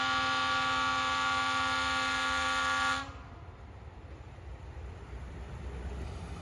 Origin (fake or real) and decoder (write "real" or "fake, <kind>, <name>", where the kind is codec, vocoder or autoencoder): real